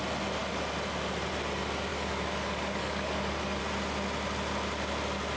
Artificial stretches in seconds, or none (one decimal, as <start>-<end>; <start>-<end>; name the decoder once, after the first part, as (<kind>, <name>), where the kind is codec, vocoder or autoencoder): 1.9-3.6 (codec, DAC)